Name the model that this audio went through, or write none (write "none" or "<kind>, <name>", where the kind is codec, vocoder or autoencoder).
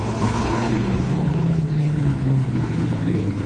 codec, HILCodec